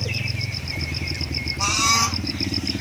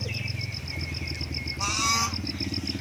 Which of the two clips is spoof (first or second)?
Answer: first